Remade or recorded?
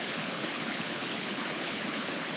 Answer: remade